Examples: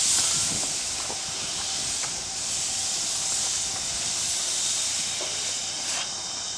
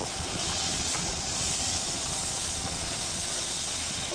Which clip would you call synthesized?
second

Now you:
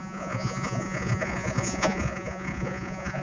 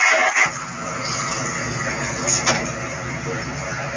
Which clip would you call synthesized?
first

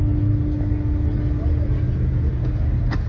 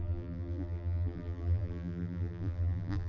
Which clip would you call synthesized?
second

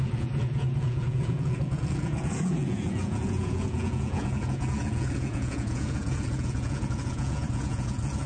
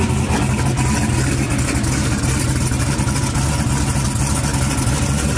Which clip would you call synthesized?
first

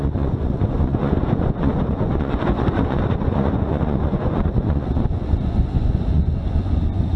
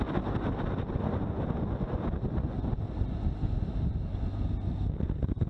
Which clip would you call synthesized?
first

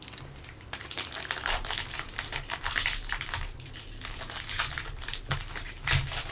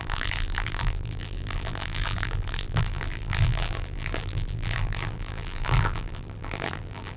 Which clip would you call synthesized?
second